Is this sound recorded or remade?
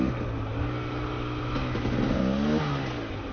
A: recorded